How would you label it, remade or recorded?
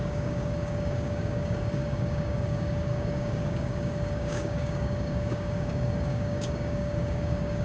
remade